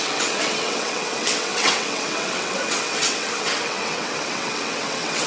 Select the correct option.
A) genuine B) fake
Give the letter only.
B